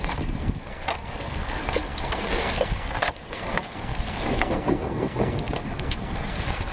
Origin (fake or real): fake